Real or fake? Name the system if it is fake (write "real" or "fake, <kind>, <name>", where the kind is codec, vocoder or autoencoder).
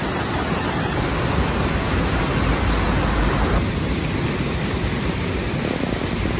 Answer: real